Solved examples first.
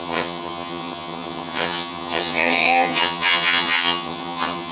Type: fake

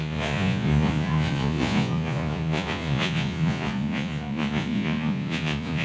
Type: fake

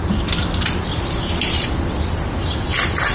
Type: real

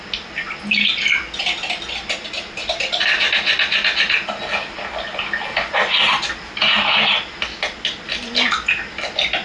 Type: real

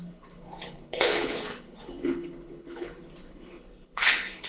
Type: fake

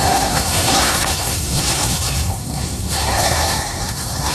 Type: fake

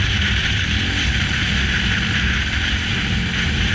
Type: real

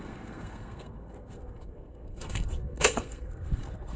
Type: fake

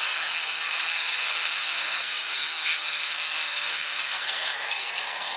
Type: fake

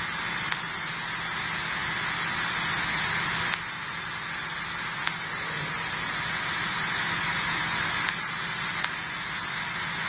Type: real